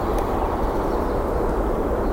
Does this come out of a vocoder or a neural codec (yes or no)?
no